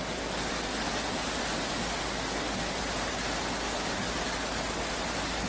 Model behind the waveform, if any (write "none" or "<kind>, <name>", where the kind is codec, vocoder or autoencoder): none